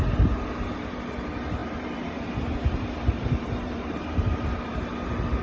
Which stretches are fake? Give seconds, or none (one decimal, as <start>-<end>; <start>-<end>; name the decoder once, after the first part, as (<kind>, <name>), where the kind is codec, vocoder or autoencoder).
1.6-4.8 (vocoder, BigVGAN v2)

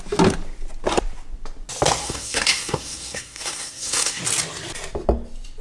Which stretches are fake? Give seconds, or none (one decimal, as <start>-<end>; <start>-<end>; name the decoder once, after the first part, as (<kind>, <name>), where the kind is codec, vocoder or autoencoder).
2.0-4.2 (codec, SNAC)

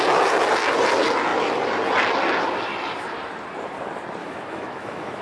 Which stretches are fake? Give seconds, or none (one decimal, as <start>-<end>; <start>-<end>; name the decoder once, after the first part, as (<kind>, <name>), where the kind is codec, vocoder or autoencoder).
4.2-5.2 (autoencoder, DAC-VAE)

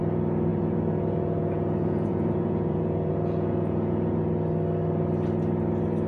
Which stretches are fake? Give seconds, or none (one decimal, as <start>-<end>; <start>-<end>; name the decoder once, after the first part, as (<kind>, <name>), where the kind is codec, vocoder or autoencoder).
0.5-4.2 (vocoder, Vocos)

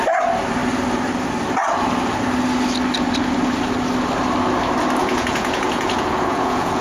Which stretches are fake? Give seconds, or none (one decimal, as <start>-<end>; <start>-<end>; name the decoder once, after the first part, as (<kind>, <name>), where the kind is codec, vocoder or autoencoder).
5.0-6.8 (vocoder, Vocos)